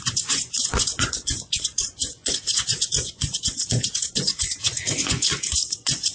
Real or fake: fake